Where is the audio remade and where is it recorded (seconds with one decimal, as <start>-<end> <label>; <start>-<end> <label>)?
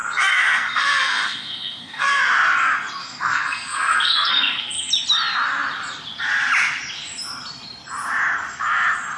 0.0-2.2 remade; 2.2-3.0 recorded; 3.0-4.9 remade; 4.9-9.2 recorded